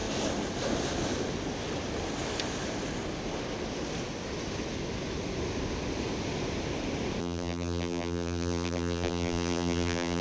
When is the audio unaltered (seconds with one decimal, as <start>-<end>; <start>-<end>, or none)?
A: 0.0-7.2